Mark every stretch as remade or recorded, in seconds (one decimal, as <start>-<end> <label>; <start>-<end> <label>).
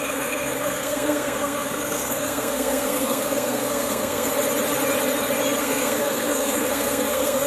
0.0-4.3 remade; 4.3-5.6 recorded; 5.6-7.5 remade